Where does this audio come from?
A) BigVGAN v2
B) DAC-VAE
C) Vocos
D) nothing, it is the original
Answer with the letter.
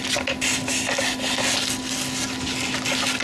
D